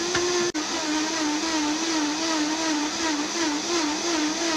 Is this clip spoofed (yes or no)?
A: no